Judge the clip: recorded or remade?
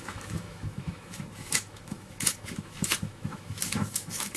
remade